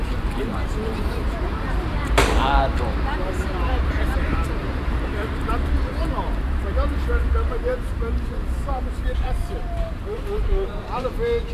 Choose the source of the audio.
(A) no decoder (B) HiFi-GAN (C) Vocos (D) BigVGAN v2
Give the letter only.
D